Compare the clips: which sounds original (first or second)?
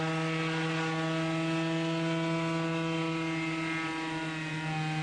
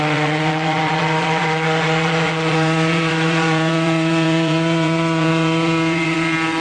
first